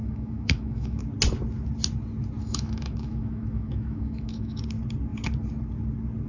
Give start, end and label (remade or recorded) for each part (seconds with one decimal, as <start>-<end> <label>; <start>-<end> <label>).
0.0-1.0 remade; 1.0-2.4 recorded; 2.4-4.6 remade; 4.6-6.3 recorded